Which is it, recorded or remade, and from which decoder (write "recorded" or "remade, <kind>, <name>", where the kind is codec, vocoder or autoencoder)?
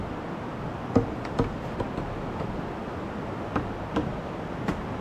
recorded